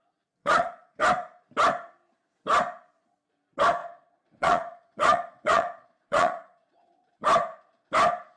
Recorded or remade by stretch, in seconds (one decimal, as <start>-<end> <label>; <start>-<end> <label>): 0.0-0.4 recorded; 0.4-1.0 remade; 1.0-3.8 recorded; 3.8-7.1 remade; 7.1-8.4 recorded